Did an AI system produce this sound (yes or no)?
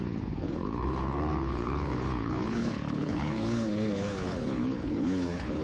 yes